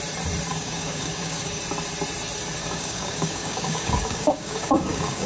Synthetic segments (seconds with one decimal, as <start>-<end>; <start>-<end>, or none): 0.5-1.6; 2.6-5.3